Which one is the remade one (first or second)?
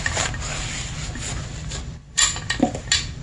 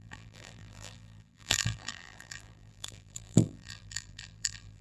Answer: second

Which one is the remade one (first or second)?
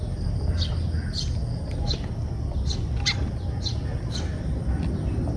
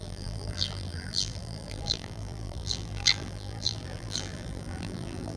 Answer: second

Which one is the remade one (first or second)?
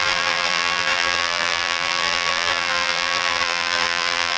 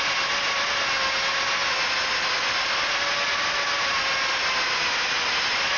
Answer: first